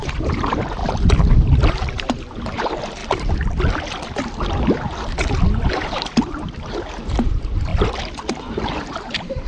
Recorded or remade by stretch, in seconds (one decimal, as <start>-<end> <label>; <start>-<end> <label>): 0.0-0.8 remade; 0.8-1.7 recorded; 1.7-3.0 remade; 3.0-5.7 recorded; 5.7-7.7 remade; 7.7-8.5 recorded; 8.5-9.5 remade